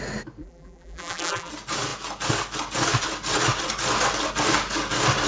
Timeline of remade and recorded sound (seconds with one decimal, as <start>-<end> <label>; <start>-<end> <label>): 0.0-0.4 recorded; 0.4-1.5 remade; 1.5-5.3 recorded